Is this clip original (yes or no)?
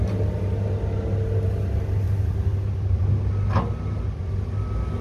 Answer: yes